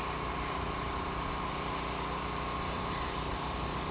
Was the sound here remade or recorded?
recorded